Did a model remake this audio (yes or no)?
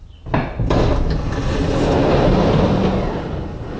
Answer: no